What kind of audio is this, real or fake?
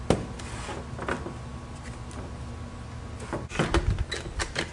real